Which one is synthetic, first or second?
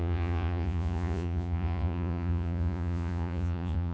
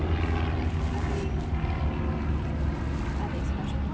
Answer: first